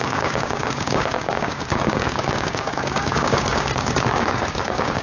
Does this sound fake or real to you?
fake